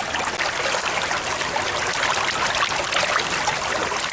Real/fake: real